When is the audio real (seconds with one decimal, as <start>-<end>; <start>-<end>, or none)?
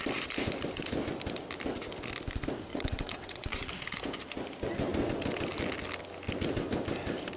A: 0.0-2.7; 3.7-7.4